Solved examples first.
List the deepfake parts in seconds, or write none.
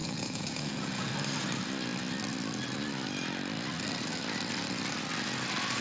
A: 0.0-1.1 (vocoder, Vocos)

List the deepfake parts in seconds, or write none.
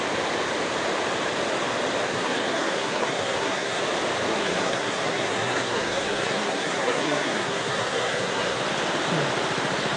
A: 2.1-3.8 (codec, SNAC); 4.3-8.6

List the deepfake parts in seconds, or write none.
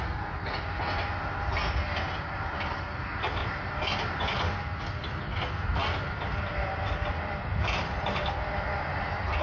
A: 3.4-4.2 (vocoder, BigVGAN v2); 5.8-7.4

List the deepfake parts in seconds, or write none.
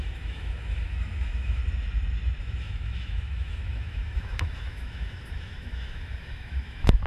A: 0.0-1.6 (autoencoder, DAC-VAE); 2.4-7.1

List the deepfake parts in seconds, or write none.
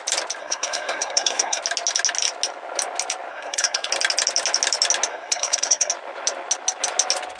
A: 0.4-1.6 (codec, SNAC); 3.3-3.9; 5.1-5.9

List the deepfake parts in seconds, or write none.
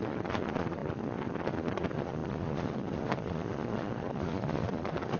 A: 0.0-5.2 (vocoder, Vocos)